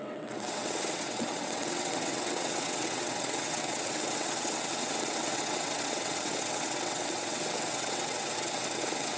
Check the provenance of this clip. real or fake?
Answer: fake